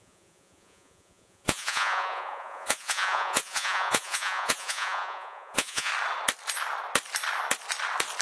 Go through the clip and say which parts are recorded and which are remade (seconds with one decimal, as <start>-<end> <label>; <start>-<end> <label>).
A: 0.0-5.9 remade; 5.9-8.2 recorded